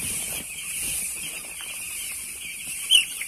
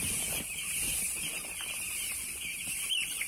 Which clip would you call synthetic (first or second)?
second